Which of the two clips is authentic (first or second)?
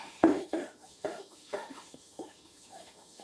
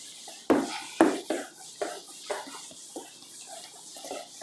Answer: second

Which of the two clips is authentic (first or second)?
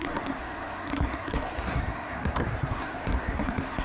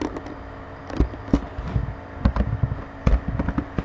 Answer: second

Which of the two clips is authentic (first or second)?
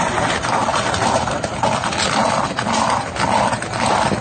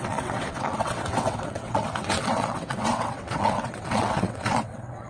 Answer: first